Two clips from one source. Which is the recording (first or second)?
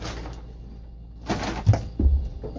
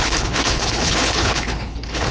first